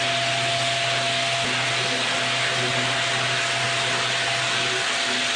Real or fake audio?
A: real